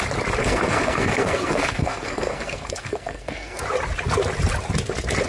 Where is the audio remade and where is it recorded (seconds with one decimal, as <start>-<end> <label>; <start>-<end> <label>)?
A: 0.0-0.4 recorded; 0.4-3.6 remade; 3.6-5.3 recorded